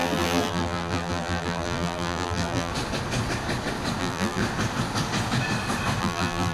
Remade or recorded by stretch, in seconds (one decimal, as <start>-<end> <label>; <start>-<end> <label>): 0.0-2.7 remade; 2.7-4.0 recorded; 4.0-4.4 remade; 4.4-6.0 recorded; 6.0-6.5 remade